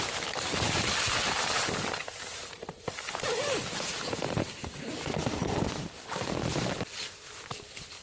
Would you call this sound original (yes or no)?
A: no